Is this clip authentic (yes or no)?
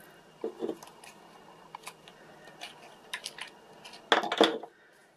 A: yes